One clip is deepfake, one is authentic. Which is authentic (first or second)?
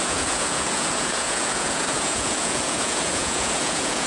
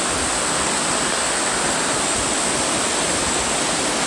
second